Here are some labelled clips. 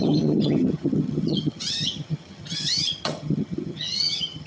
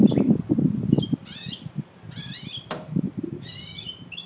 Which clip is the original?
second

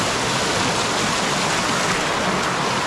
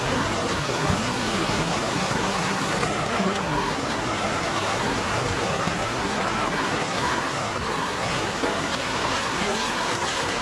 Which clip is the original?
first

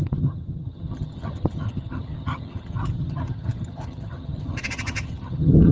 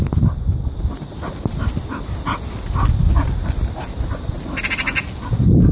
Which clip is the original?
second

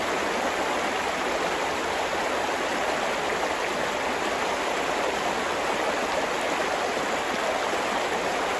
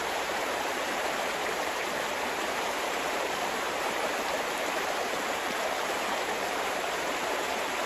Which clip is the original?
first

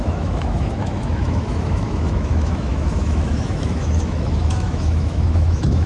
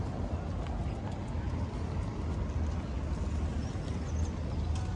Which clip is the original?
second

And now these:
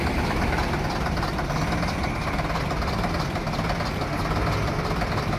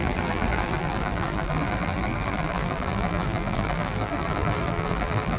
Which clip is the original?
first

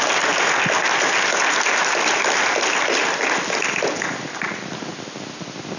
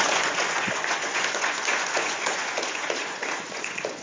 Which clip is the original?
first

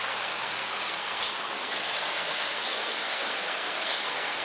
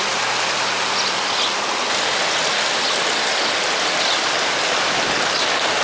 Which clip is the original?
second